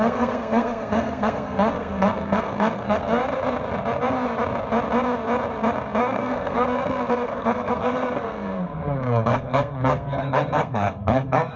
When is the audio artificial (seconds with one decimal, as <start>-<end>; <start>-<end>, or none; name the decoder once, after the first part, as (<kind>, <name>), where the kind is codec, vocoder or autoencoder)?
0.0-3.2 (codec, SNAC); 6.0-11.6